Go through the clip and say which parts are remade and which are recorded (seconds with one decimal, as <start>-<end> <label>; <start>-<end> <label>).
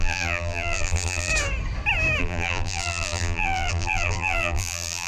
0.0-1.3 remade; 1.3-2.2 recorded; 2.2-5.1 remade